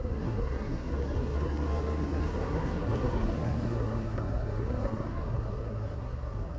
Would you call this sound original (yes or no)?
no